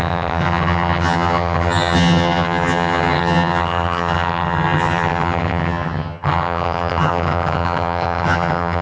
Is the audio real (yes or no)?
no